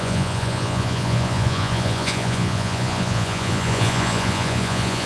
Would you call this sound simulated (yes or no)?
yes